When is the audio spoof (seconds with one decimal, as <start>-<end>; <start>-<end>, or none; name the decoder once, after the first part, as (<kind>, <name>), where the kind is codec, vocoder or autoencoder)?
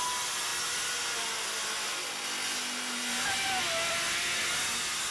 none